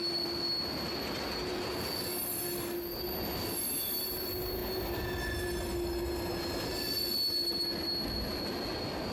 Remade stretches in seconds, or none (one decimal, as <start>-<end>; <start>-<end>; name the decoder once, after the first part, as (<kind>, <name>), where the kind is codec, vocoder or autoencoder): none